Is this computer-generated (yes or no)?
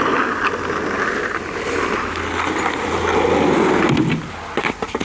no